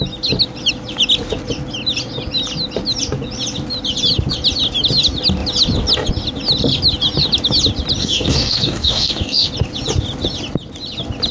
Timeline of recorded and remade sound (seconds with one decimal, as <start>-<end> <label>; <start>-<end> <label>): 0.0-8.0 recorded; 8.0-9.5 remade; 9.5-11.3 recorded